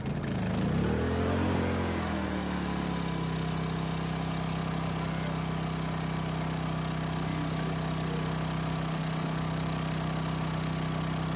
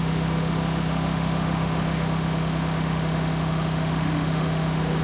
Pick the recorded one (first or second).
first